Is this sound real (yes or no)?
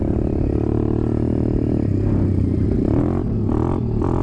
yes